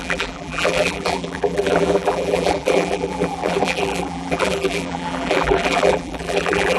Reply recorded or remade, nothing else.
remade